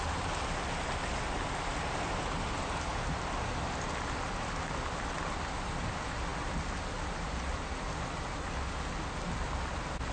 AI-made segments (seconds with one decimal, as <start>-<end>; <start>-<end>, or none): none